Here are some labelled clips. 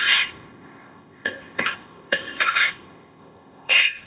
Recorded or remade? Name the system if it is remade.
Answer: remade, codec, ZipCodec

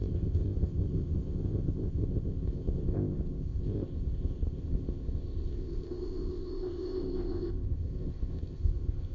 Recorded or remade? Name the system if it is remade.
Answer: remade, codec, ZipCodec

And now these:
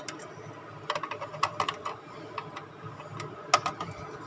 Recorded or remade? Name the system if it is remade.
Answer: recorded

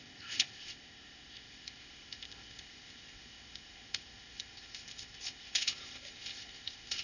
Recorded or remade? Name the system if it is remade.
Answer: remade, codec, ZipCodec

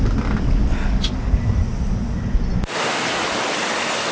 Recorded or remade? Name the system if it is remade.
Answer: recorded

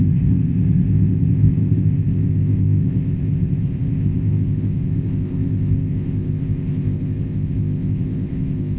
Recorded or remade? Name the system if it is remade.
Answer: remade, codec, ZipCodec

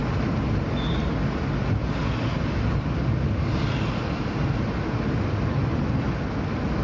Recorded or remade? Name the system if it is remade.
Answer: recorded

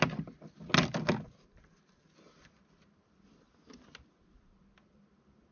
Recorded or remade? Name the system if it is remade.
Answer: recorded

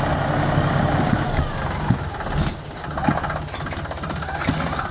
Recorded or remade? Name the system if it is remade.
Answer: recorded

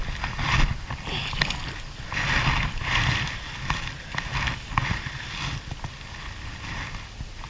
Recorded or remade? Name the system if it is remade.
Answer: recorded